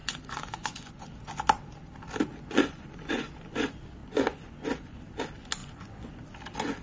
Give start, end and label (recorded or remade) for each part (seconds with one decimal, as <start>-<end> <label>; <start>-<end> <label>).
0.0-0.9 remade; 0.9-2.3 recorded; 2.3-3.3 remade; 3.3-4.0 recorded; 4.0-5.0 remade; 5.0-5.6 recorded; 5.6-6.2 remade; 6.2-6.8 recorded

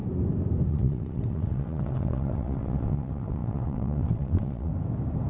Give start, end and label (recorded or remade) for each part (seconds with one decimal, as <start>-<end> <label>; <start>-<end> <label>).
0.0-0.7 recorded; 0.7-4.7 remade; 4.7-5.3 recorded

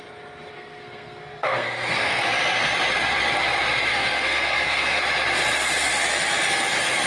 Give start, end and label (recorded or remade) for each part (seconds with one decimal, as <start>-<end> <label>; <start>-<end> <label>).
0.0-0.5 recorded; 0.5-2.2 remade; 2.2-3.9 recorded; 3.9-5.0 remade; 5.0-7.1 recorded

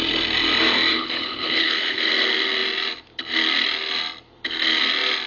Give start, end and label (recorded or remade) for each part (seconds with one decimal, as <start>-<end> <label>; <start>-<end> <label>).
0.0-0.9 recorded; 0.9-2.1 remade; 2.1-5.3 recorded

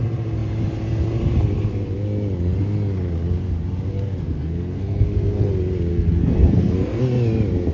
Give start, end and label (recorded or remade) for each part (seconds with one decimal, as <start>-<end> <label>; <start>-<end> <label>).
0.0-3.9 recorded; 3.9-5.5 remade; 5.5-5.9 recorded; 5.9-7.0 remade; 7.0-7.7 recorded

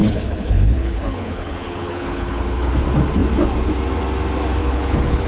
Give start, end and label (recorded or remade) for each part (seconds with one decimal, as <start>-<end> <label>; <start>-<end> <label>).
0.0-2.7 remade; 2.7-4.6 recorded; 4.6-5.3 remade

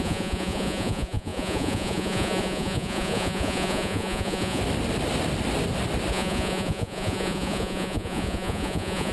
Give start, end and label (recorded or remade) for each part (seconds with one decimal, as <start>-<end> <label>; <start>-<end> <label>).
0.0-4.6 remade; 4.6-6.1 recorded; 6.1-9.1 remade